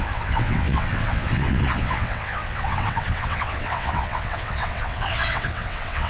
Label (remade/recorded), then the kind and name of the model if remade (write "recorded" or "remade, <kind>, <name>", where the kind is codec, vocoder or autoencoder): remade, vocoder, WaveNeXt